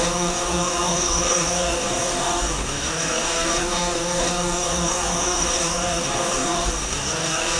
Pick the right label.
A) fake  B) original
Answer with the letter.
A